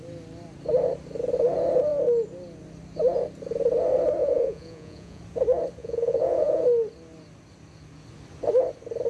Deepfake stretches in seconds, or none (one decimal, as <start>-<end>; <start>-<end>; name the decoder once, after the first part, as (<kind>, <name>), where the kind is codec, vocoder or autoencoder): 4.2-5.2 (vocoder, Vocos); 5.8-6.6